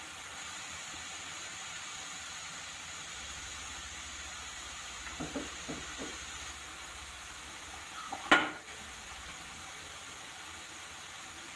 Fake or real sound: real